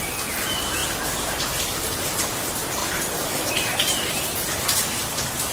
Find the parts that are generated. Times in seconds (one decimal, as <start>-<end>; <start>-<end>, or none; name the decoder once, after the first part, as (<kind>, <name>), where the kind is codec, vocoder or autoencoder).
none